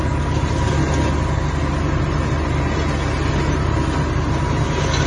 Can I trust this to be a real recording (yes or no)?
yes